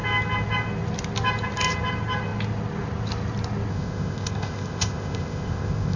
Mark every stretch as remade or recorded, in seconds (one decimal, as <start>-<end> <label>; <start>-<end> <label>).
0.0-3.7 recorded; 3.7-6.0 remade